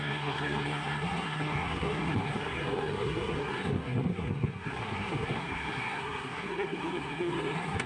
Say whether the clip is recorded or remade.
remade